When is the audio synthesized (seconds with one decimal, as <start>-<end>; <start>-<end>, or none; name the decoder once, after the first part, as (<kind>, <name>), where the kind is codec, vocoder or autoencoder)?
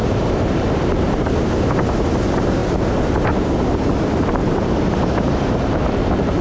0.0-6.4 (vocoder, BigVGAN v2)